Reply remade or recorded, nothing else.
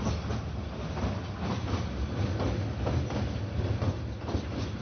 recorded